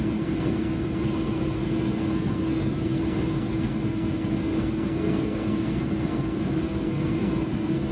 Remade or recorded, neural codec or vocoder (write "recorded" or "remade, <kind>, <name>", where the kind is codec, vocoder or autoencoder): remade, codec, SNAC